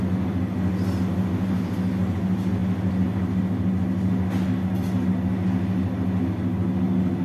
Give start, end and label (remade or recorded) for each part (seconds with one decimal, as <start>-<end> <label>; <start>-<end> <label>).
0.0-7.2 recorded